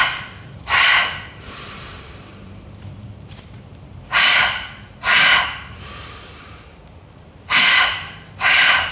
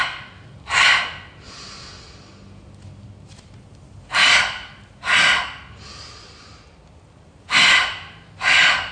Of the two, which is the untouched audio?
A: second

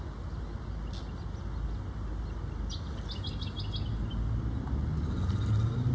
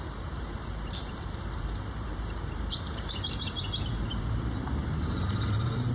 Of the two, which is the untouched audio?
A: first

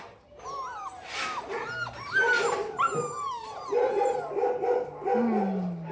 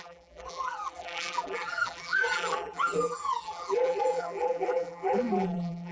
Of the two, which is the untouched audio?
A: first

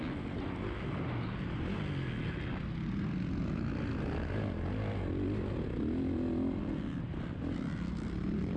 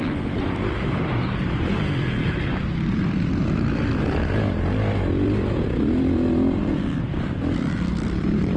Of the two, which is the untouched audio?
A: first